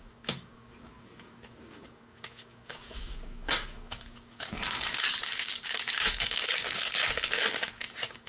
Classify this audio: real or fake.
fake